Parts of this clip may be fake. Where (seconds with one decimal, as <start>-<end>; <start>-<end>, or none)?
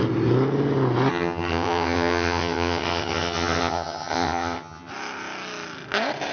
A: 1.1-4.9